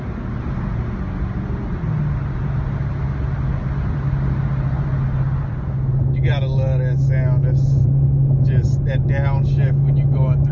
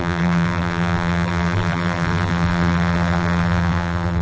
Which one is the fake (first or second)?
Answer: second